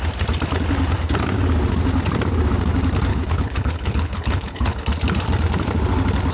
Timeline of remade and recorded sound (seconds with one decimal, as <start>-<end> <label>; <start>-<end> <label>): 0.0-3.1 recorded; 3.1-4.8 remade; 4.8-6.3 recorded